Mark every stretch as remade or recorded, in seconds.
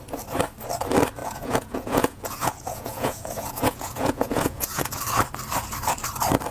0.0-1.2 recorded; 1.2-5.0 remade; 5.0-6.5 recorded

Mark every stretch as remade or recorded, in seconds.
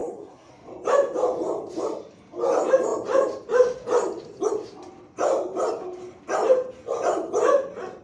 0.0-0.5 remade; 0.5-8.0 recorded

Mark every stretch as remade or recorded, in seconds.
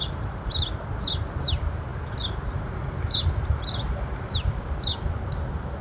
0.0-5.8 recorded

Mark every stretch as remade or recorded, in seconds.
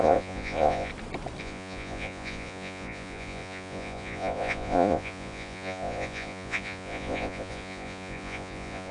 0.0-0.9 remade; 0.9-1.4 recorded; 1.4-8.9 remade